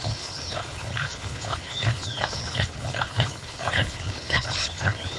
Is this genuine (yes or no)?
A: no